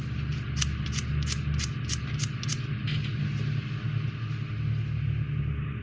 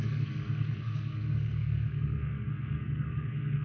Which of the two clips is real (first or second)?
first